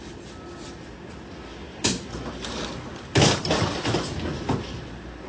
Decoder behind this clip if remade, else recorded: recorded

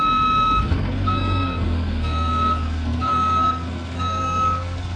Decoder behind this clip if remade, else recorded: remade, codec, SNAC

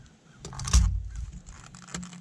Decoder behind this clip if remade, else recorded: recorded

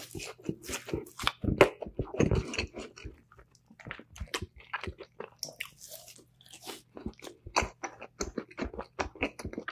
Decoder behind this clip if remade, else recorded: recorded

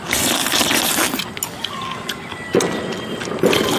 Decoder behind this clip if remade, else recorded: recorded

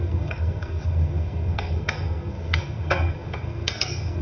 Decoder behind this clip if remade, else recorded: remade, codec, SNAC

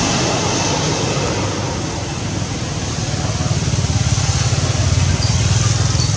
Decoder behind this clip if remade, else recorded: recorded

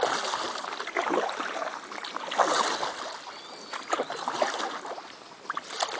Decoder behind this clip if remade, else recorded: recorded